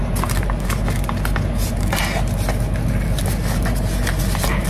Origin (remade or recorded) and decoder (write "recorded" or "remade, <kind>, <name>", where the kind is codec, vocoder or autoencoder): recorded